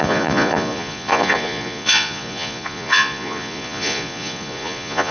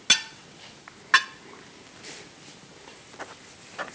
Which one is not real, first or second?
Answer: first